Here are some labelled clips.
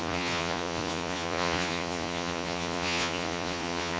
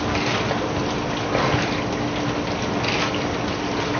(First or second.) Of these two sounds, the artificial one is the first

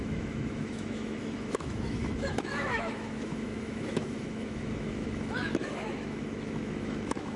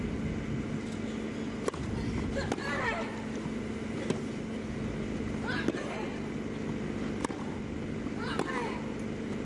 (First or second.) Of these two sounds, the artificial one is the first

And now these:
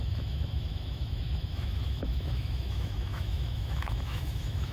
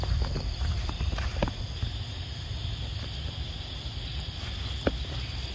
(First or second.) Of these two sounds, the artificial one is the first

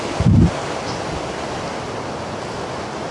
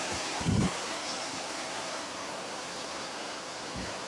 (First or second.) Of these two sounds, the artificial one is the second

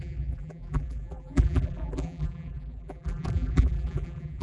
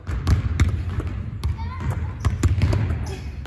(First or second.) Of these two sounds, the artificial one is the first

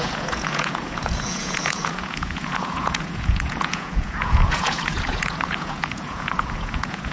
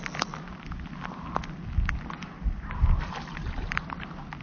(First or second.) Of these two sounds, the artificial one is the first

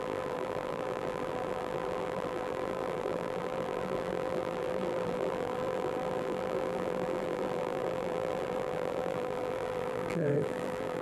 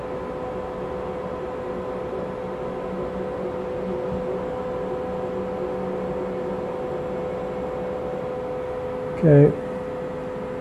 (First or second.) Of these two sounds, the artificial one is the first